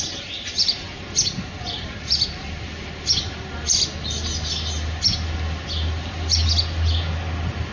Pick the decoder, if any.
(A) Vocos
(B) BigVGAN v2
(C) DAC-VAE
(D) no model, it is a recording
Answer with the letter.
D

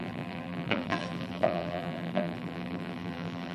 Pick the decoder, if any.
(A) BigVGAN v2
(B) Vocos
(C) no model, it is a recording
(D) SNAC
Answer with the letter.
A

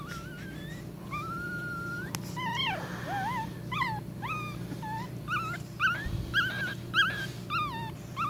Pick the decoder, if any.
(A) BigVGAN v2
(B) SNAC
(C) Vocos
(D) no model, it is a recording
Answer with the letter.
D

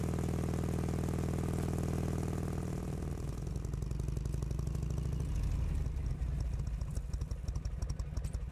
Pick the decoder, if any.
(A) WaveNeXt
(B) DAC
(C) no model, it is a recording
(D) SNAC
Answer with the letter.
C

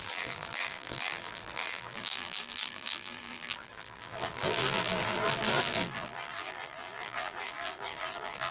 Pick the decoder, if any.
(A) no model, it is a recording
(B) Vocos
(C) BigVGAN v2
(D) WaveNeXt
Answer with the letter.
C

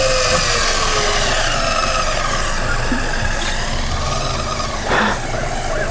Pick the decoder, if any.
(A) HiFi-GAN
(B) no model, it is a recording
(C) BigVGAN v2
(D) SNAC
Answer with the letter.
B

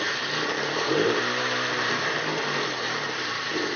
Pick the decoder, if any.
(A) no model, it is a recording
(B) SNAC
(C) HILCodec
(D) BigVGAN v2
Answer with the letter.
D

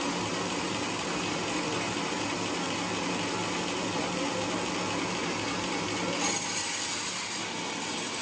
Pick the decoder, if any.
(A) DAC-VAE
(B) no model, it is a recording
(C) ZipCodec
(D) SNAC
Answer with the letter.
B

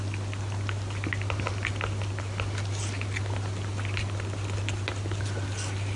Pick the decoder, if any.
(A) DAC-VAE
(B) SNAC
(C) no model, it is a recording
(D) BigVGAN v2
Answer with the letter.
C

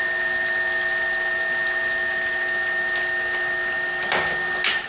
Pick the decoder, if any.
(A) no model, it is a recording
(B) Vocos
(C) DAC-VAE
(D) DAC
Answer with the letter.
A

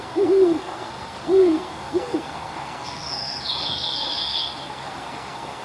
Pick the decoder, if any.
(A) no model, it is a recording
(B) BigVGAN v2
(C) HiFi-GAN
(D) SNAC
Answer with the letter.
D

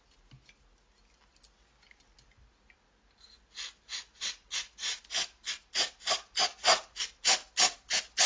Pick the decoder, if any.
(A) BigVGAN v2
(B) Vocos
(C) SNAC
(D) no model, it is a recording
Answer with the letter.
D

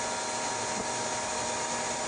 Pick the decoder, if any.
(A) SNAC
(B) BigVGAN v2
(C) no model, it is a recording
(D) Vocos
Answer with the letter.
C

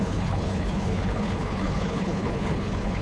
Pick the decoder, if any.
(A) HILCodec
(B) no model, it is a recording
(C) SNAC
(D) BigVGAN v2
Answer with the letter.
A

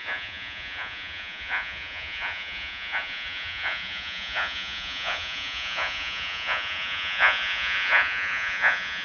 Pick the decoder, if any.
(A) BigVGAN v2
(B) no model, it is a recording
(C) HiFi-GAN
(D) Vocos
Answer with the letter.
D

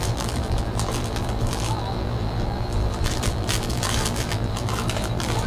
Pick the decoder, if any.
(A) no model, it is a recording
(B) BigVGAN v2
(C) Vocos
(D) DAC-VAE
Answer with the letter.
B